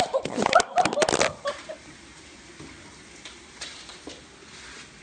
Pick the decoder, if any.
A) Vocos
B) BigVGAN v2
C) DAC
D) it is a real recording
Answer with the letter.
D